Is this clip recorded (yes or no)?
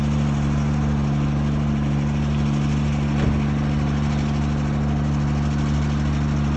yes